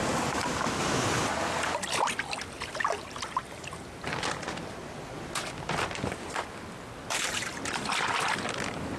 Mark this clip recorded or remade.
recorded